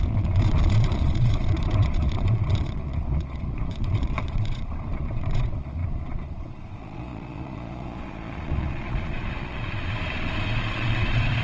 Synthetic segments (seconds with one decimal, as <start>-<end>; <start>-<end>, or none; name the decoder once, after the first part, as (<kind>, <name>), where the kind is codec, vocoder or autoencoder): 0.0-11.4 (vocoder, Vocos)